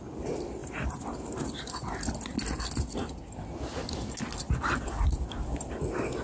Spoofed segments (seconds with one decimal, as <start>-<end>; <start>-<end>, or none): none